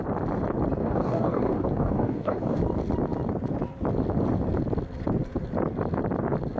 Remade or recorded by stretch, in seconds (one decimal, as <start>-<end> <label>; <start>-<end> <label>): 0.0-0.8 recorded; 0.8-2.6 remade; 2.6-6.6 recorded

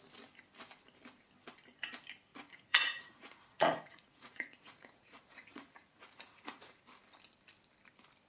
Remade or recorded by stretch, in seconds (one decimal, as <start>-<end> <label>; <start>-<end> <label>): 0.0-2.3 recorded; 2.3-6.8 remade; 6.8-8.3 recorded

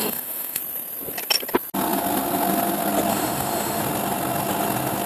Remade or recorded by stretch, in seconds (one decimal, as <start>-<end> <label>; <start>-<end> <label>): 0.0-0.6 remade; 0.6-3.1 recorded; 3.1-3.8 remade; 3.8-5.1 recorded